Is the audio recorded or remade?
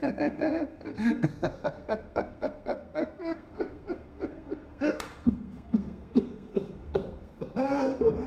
remade